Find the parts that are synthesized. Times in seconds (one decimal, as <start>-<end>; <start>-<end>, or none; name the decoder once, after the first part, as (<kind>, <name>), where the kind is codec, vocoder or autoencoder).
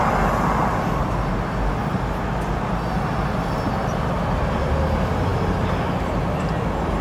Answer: 0.7-1.3 (vocoder, BigVGAN v2)